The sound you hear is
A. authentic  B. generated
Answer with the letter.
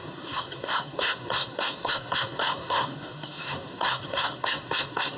B